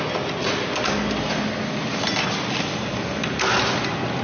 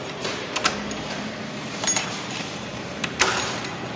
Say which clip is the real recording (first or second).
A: first